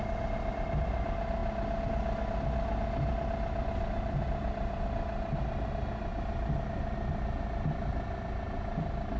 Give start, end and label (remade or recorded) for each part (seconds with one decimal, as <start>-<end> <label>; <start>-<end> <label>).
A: 0.0-9.2 recorded